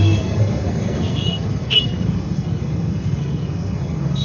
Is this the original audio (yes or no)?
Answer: no